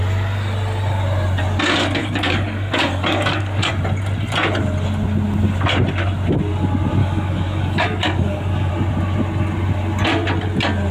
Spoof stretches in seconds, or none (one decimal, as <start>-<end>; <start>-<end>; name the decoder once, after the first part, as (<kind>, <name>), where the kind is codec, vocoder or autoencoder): 2.0-3.7 (codec, DAC); 7.0-8.7